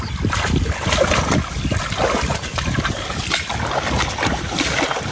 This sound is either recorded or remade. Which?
recorded